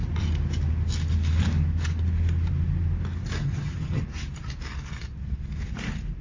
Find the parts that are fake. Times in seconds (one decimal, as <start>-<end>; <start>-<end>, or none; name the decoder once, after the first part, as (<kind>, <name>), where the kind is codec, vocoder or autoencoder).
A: 3.4-4.0 (vocoder, HiFi-GAN)